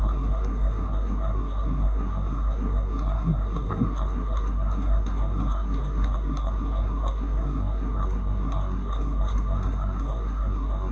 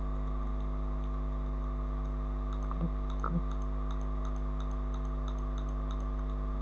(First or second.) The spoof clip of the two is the first